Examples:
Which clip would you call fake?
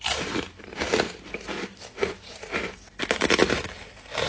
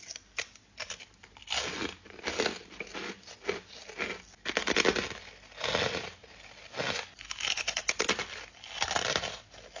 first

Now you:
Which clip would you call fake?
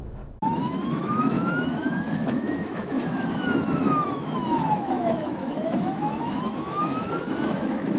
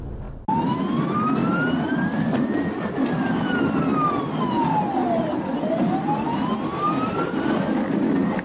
first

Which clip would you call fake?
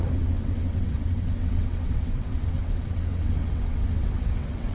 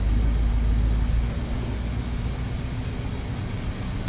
first